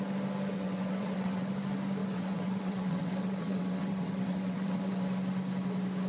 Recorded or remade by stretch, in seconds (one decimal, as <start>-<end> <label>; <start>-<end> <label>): 0.0-0.5 recorded; 0.5-1.5 remade; 1.5-2.0 recorded; 2.0-4.9 remade; 4.9-6.1 recorded